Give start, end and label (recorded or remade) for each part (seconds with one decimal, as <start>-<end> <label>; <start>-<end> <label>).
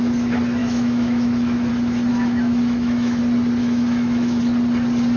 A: 0.0-0.6 recorded; 0.6-1.7 remade; 1.7-2.1 recorded; 2.1-3.2 remade; 3.2-3.6 recorded; 3.6-4.4 remade; 4.4-5.2 recorded